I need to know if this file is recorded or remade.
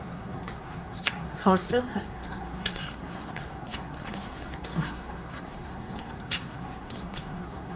remade